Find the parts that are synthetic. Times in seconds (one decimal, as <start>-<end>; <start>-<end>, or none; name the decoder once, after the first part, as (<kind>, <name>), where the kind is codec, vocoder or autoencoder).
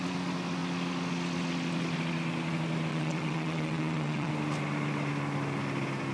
2.9-4.3 (vocoder, WaveNeXt)